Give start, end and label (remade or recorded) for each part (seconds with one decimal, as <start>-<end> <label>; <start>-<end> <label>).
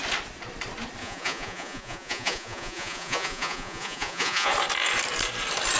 0.0-1.0 recorded; 1.0-4.5 remade; 4.5-5.8 recorded